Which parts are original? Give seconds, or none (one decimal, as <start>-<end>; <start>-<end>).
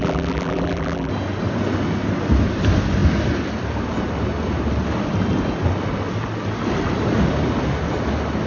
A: 1.1-8.5